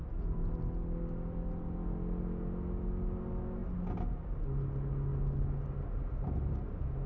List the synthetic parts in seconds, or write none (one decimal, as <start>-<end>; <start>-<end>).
none